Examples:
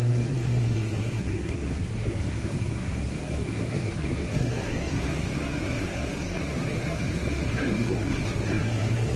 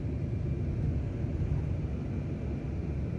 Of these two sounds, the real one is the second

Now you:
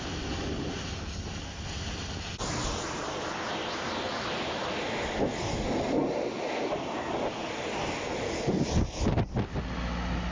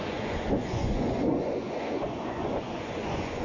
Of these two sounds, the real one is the first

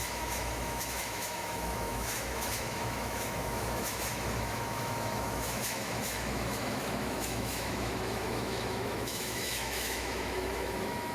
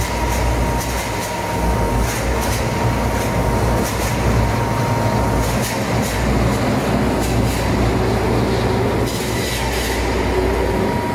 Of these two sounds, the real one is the second